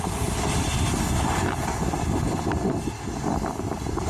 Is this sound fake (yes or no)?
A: no